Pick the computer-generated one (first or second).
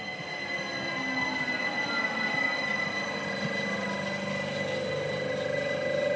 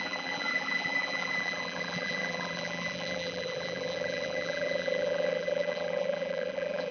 second